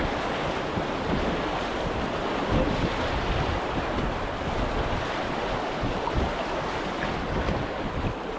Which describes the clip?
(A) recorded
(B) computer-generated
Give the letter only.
A